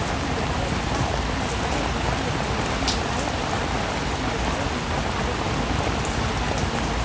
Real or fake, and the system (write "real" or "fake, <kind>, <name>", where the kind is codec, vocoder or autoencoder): real